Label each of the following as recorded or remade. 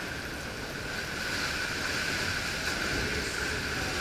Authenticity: recorded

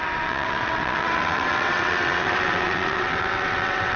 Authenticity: remade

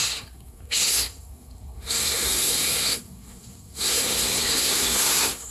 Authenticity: remade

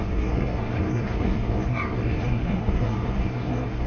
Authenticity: remade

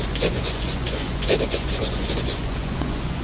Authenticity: remade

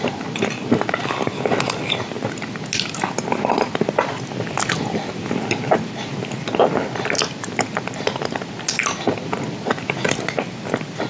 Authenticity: recorded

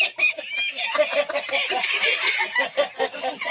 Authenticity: recorded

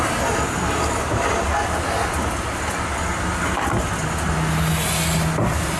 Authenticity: recorded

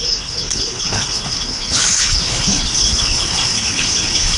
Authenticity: remade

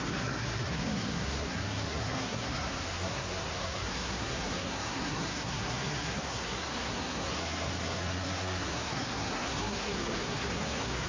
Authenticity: remade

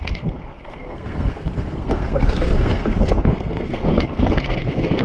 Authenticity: remade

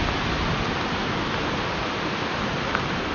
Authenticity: recorded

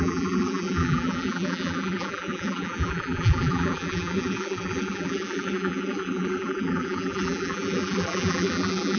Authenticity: remade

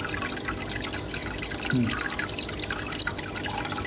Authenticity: recorded